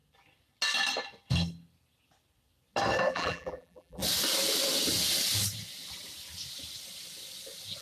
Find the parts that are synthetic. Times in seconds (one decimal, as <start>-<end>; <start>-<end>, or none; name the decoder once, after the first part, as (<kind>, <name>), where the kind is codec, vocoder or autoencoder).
3.1-4.0 (vocoder, BigVGAN v2)